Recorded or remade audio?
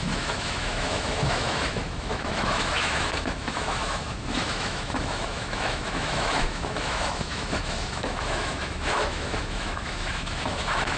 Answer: remade